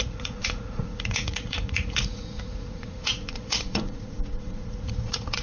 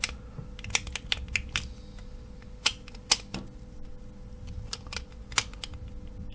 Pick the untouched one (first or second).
second